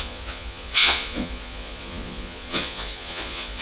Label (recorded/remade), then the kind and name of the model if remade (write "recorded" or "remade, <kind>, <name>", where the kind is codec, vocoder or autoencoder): remade, vocoder, Vocos